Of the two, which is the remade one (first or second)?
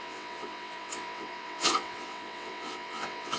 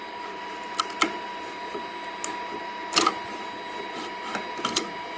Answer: first